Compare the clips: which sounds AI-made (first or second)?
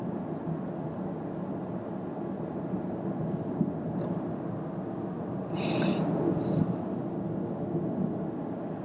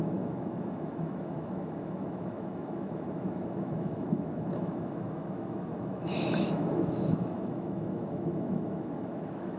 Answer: second